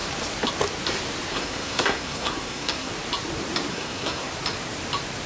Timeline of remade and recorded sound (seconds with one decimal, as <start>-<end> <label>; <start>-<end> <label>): 0.0-1.3 recorded; 1.3-2.9 remade; 2.9-3.7 recorded; 3.7-4.3 remade; 4.3-5.3 recorded